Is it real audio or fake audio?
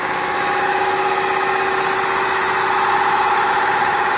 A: fake